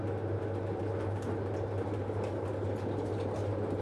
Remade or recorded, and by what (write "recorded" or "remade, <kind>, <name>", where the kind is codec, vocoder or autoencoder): recorded